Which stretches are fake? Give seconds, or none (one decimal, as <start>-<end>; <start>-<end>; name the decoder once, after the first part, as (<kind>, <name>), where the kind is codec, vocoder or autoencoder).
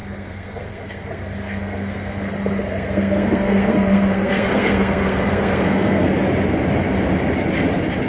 0.0-6.1 (codec, SNAC)